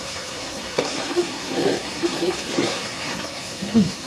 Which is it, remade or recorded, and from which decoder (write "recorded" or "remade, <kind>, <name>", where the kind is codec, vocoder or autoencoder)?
remade, codec, SNAC